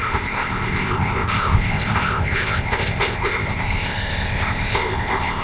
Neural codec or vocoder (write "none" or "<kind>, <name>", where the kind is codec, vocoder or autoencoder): codec, ZipCodec